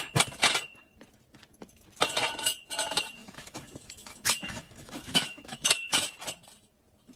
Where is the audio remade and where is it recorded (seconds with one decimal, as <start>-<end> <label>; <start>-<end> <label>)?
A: 0.0-3.2 recorded; 3.2-6.1 remade; 6.1-7.2 recorded